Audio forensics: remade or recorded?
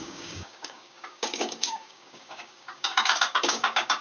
remade